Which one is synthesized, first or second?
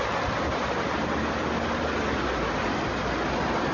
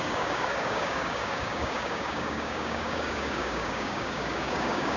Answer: second